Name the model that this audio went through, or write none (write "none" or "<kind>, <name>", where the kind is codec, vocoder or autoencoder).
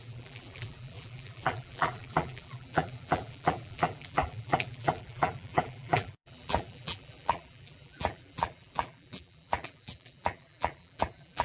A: vocoder, BigVGAN v2